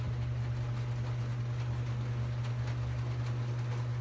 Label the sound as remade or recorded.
recorded